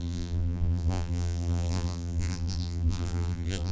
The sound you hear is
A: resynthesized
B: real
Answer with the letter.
A